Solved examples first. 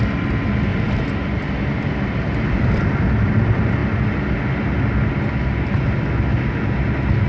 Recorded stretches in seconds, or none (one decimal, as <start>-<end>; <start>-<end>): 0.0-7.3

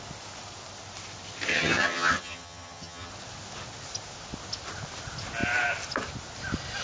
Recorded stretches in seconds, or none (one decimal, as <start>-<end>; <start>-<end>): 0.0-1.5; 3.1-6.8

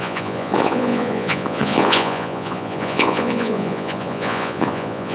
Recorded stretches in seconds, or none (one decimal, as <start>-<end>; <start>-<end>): none

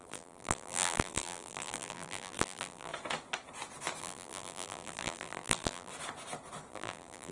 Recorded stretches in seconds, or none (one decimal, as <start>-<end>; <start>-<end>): 2.9-4.0; 5.9-6.7

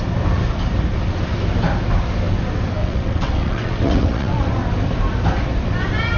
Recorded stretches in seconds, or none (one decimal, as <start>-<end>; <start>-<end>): 0.0-2.8; 4.5-6.2

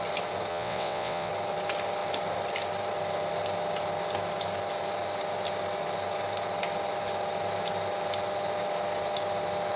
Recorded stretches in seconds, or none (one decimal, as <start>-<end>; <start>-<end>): 0.0-0.5; 1.3-9.8